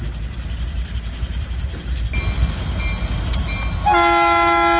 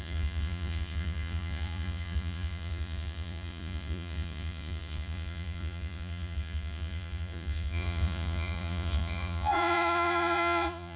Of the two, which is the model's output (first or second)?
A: second